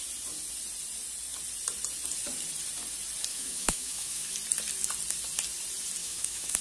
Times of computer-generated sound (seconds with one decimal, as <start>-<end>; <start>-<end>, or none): 3.3-4.3; 6.0-6.6